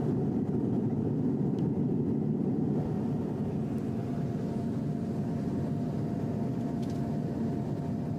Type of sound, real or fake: real